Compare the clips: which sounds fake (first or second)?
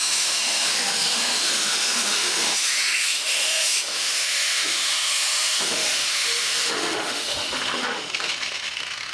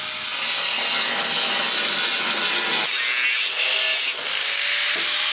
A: first